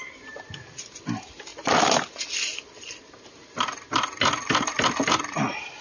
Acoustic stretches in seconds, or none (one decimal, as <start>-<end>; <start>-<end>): 0.0-5.8